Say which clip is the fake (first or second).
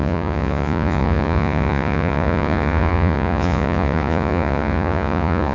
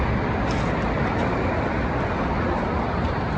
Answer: first